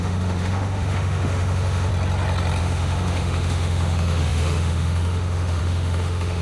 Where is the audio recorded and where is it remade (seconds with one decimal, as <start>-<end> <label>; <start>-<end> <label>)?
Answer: 0.0-1.9 remade; 1.9-2.6 recorded; 2.6-6.4 remade